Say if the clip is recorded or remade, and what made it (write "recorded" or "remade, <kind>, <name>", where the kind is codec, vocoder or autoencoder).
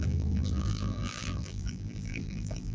remade, vocoder, BigVGAN v2